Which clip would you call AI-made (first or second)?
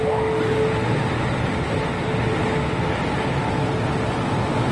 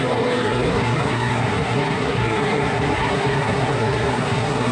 second